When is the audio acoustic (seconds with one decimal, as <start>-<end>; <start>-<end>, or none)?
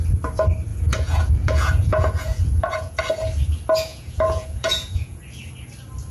0.0-0.7; 3.0-3.9; 5.2-6.1